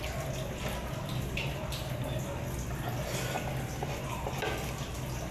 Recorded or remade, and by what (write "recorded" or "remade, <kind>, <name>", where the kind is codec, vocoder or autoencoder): recorded